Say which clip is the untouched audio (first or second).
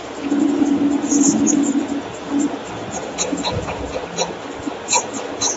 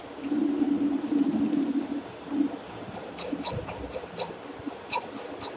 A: first